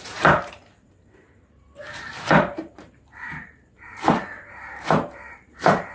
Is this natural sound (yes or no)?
no